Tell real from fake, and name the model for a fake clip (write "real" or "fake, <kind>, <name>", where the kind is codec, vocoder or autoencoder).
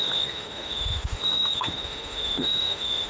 fake, autoencoder, DAC-VAE